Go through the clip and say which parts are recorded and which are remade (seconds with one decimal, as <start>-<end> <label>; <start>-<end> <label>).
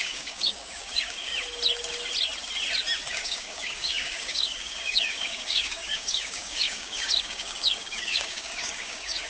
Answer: 0.0-1.3 remade; 1.3-3.1 recorded; 3.1-9.3 remade